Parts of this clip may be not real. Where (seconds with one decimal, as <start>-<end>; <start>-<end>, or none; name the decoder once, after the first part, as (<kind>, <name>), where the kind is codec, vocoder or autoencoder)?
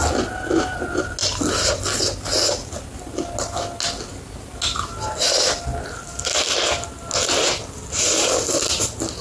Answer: none